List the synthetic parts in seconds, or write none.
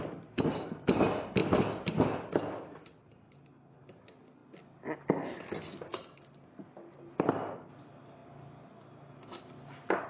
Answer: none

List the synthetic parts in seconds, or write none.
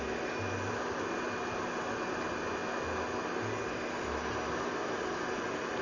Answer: none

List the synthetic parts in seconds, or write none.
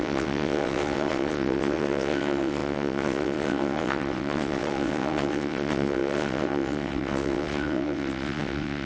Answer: 0.0-8.9 (vocoder, WaveNeXt)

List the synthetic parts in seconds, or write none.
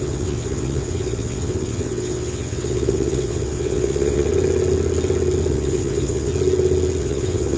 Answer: 0.0-4.3 (vocoder, WaveNeXt); 5.5-6.3; 7.0-7.6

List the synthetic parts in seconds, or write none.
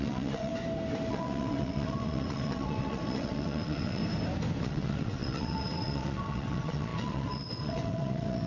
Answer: 0.0-0.5 (vocoder, WaveNeXt); 1.1-4.0; 4.6-8.5